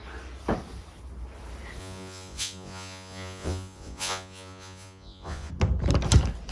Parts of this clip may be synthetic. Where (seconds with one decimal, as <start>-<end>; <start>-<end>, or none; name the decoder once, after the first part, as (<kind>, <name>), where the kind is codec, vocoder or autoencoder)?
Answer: 1.8-5.5 (vocoder, Vocos)